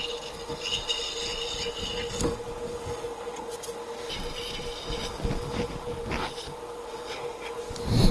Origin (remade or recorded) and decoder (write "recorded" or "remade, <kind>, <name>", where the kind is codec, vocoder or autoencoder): recorded